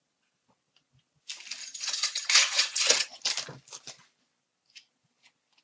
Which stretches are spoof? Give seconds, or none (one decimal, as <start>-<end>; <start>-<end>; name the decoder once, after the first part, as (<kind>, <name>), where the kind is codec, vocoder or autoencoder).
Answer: 1.6-3.2 (vocoder, HiFi-GAN)